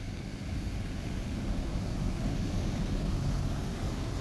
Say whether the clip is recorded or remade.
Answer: remade